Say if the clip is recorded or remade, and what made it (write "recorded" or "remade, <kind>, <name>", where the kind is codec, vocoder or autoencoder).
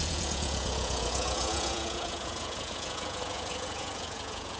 remade, vocoder, Vocos